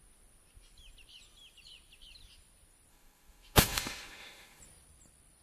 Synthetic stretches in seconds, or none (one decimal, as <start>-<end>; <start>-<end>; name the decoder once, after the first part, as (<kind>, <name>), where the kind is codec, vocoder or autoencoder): 2.9-4.6 (autoencoder, DAC-VAE)